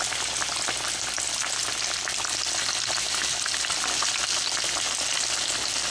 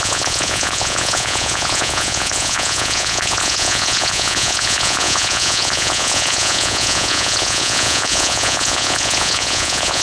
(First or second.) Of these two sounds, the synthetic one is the second